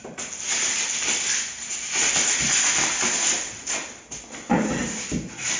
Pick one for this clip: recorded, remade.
recorded